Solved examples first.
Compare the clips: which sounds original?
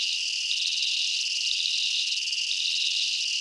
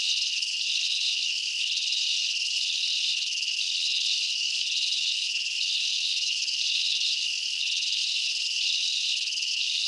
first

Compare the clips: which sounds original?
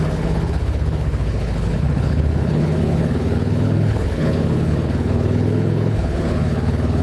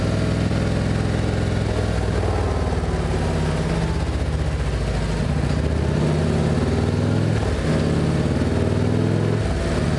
second